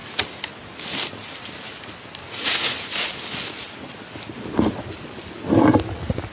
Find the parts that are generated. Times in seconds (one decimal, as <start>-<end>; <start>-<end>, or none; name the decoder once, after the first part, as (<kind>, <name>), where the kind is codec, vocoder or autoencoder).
2.2-3.0 (vocoder, Vocos)